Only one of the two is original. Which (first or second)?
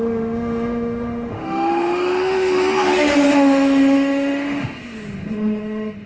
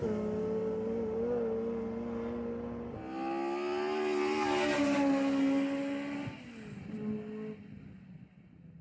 second